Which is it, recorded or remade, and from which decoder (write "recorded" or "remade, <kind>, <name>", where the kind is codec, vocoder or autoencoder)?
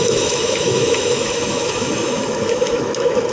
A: remade, autoencoder, DAC-VAE